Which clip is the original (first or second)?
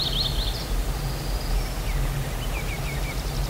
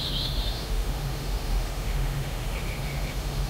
first